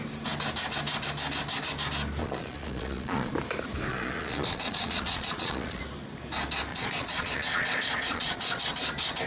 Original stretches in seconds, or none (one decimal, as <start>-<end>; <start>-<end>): 0.0-2.2; 3.3-3.9; 5.8-6.7; 8.6-9.3